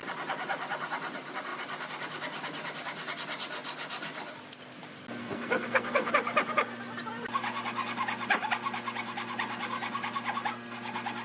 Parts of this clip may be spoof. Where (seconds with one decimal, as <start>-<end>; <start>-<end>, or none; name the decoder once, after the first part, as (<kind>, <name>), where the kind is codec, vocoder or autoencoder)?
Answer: 5.2-6.1 (codec, SNAC)